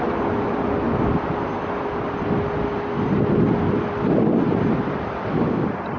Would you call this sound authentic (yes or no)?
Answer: yes